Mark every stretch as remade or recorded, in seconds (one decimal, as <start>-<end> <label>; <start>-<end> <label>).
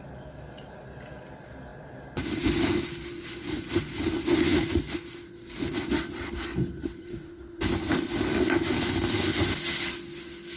0.0-7.1 recorded; 7.1-7.6 remade; 7.6-10.6 recorded